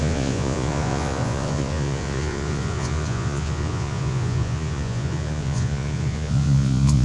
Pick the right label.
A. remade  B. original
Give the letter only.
A